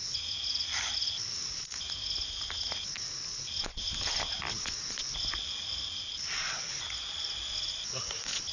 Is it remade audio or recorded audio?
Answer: recorded